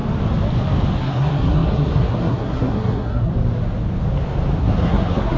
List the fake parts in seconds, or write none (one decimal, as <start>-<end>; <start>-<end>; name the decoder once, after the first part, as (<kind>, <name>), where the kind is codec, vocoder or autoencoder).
1.0-3.3 (codec, SNAC); 4.6-5.4